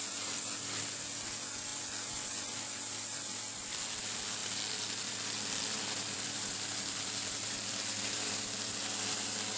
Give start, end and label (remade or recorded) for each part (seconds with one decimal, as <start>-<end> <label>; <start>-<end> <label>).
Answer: 0.0-4.4 recorded; 4.4-8.7 remade; 8.7-9.6 recorded